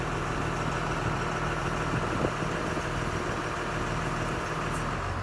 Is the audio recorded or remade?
recorded